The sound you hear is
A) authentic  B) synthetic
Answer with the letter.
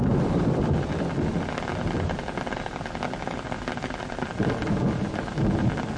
A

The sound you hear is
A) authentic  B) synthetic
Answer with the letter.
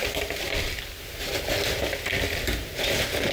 A